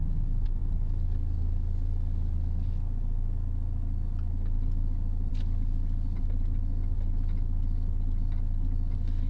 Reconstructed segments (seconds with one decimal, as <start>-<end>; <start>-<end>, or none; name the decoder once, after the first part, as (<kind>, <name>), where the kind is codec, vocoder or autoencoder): none